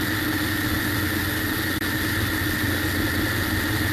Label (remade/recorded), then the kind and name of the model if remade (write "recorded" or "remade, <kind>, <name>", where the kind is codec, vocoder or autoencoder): recorded